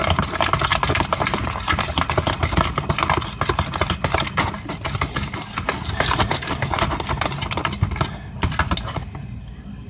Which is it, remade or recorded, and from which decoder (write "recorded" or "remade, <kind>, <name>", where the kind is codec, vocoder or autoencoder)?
recorded